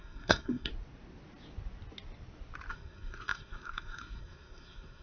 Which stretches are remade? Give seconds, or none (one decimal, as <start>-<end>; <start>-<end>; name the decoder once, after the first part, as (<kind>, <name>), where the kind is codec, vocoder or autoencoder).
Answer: 0.0-0.7 (codec, SNAC); 2.7-5.0